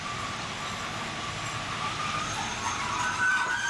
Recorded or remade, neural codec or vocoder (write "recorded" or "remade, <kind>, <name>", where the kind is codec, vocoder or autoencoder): recorded